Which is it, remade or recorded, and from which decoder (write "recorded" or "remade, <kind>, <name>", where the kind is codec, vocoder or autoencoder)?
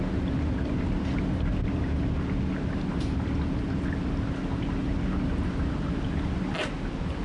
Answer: recorded